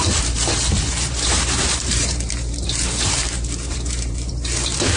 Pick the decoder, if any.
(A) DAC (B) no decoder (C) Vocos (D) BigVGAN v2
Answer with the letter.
D